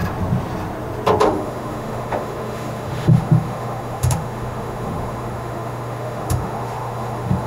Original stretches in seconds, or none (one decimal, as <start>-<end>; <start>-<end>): 0.0-1.2